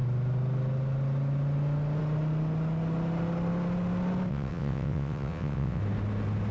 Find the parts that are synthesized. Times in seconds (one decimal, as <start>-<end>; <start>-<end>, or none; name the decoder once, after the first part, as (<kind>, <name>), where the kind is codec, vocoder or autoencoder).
4.3-5.8 (vocoder, WaveNeXt)